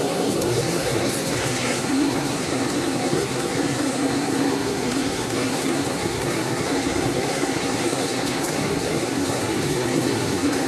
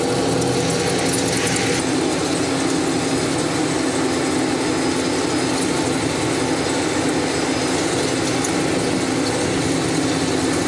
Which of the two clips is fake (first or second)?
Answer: first